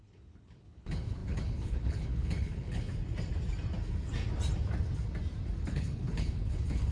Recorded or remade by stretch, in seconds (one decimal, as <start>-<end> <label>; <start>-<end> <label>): 0.0-2.9 remade; 2.9-5.7 recorded; 5.7-6.9 remade